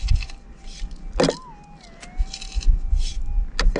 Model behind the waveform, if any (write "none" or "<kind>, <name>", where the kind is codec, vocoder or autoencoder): none